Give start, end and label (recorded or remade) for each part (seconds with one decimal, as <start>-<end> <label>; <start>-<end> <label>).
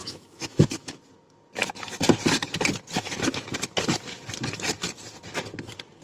0.0-1.0 remade; 1.0-6.0 recorded